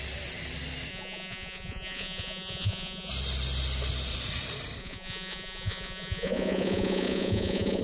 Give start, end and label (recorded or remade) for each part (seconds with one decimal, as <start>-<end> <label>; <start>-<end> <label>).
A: 0.0-0.9 recorded; 0.9-3.1 remade; 3.1-4.8 recorded; 4.8-7.8 remade

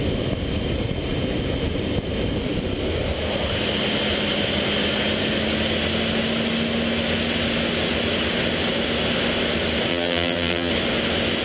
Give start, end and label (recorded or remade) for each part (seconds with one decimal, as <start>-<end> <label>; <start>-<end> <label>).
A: 0.0-9.9 recorded; 9.9-10.7 remade; 10.7-11.4 recorded

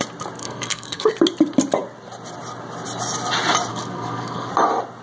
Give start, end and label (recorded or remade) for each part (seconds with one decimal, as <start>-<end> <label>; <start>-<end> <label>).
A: 0.0-0.4 recorded; 0.4-1.1 remade; 1.1-3.7 recorded; 3.7-4.5 remade; 4.5-5.0 recorded

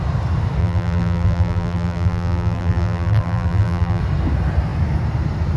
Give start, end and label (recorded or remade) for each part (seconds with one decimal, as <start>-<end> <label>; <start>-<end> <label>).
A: 0.0-0.6 recorded; 0.6-4.0 remade; 4.0-5.6 recorded

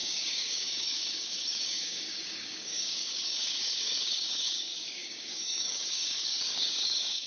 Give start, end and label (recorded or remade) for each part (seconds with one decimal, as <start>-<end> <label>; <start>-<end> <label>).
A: 0.0-7.3 remade

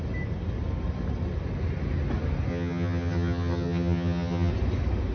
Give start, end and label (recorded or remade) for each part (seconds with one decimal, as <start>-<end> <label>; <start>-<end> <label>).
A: 0.0-2.5 recorded; 2.5-4.5 remade; 4.5-5.1 recorded